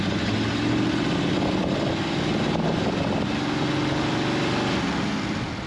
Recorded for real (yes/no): yes